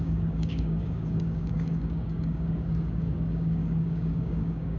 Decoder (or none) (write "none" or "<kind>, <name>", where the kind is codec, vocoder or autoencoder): codec, DAC